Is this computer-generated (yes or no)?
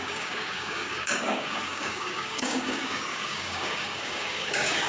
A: yes